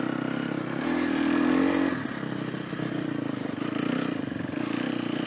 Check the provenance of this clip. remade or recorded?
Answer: recorded